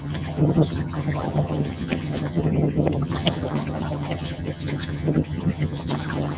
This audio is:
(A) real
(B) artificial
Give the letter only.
B